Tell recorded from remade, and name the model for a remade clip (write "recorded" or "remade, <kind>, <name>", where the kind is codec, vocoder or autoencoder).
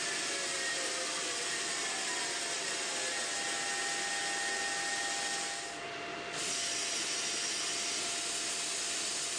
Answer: recorded